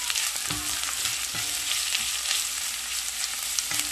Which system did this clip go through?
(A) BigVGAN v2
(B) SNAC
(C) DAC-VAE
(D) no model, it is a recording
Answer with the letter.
D